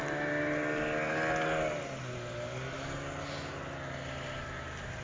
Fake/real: real